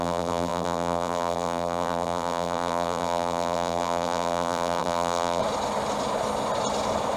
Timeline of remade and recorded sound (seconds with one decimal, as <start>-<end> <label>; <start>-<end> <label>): 0.0-5.4 remade; 5.4-7.2 recorded